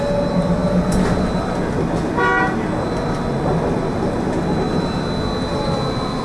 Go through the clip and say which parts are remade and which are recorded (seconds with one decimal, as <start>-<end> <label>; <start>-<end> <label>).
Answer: 0.0-6.2 recorded